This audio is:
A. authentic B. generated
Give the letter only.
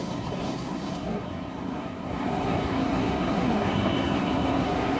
B